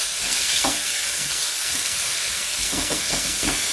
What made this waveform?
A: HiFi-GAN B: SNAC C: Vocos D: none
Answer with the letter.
B